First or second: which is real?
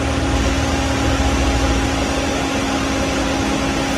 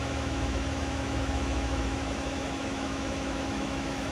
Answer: first